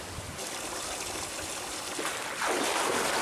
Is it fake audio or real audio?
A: real